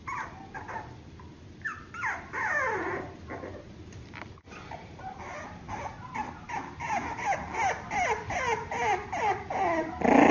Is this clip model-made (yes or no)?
no